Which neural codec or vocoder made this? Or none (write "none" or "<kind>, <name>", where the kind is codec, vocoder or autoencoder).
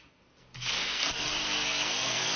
codec, SNAC